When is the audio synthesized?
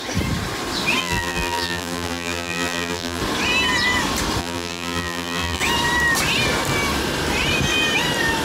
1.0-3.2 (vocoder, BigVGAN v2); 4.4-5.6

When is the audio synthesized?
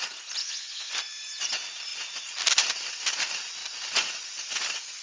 0.4-0.9 (vocoder, Vocos)